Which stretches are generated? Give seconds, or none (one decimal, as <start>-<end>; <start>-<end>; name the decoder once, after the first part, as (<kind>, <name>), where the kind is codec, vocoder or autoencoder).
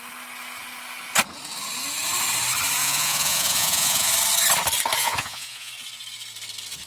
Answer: 2.8-4.1 (vocoder, Vocos); 5.0-5.7